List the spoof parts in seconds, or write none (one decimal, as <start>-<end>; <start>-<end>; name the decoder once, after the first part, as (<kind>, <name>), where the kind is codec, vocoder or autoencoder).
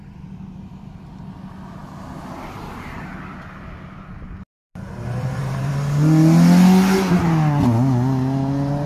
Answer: 4.7-5.7 (vocoder, BigVGAN v2)